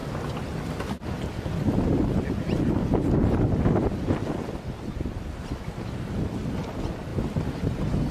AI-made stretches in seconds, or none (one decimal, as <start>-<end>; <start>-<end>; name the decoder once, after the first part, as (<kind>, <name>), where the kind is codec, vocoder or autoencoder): none

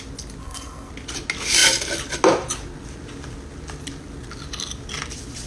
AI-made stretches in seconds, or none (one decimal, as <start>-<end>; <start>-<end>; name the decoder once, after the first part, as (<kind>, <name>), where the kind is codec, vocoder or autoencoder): 0.4-0.9 (codec, SNAC)

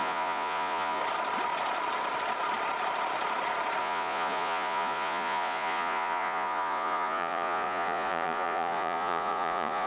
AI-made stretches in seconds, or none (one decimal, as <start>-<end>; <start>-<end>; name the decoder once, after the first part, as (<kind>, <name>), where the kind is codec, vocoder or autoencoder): 0.0-1.0 (vocoder, Vocos); 3.8-9.9